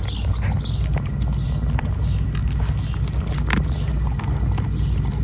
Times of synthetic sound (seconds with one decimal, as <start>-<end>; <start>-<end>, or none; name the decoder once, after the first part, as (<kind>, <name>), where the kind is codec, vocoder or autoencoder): none